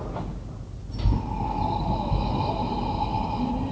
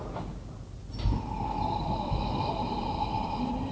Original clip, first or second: first